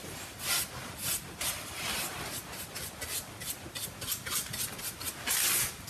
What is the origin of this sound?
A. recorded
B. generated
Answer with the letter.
A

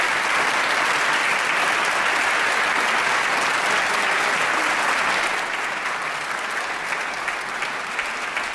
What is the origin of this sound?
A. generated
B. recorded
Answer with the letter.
B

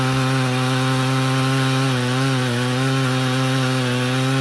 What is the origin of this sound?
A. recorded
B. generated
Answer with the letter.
A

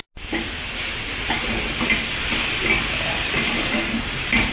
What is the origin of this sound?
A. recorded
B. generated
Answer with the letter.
A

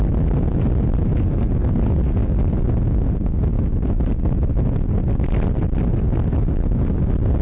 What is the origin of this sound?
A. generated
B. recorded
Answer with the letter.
B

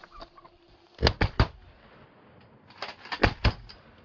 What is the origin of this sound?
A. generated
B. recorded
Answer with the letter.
B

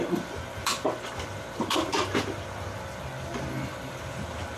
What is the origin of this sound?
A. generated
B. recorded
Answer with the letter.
A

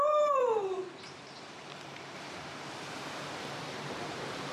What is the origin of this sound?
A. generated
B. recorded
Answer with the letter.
A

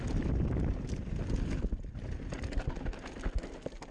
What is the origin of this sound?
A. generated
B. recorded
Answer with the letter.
B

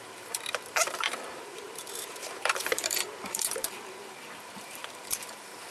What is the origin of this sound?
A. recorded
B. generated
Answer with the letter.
B